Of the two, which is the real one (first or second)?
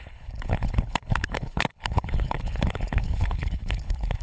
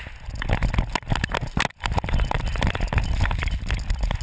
second